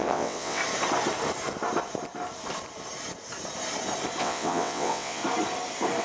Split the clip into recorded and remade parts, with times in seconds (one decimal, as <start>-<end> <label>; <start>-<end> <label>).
0.0-0.6 remade; 0.6-4.2 recorded; 4.2-5.2 remade; 5.2-6.0 recorded